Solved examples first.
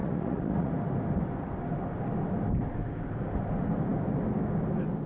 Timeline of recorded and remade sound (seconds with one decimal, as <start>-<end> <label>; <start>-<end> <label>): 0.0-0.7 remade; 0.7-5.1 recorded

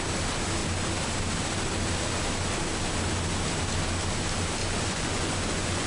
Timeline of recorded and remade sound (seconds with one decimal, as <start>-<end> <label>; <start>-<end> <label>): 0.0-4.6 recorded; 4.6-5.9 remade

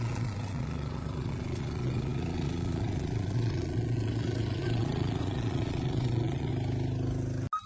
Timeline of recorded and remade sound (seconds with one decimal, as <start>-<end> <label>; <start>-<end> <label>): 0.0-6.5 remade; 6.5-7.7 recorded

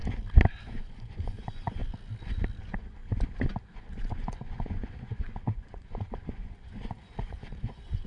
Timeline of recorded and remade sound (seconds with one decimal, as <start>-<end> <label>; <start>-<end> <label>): 0.0-0.6 recorded; 0.6-1.8 remade; 1.8-2.6 recorded; 2.6-3.0 remade; 3.0-3.6 recorded; 3.6-8.1 remade

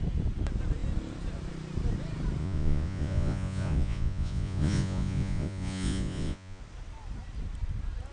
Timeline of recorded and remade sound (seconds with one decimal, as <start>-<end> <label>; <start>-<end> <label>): 0.0-2.4 recorded; 2.4-6.6 remade; 6.6-8.1 recorded